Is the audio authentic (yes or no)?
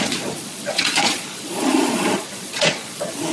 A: no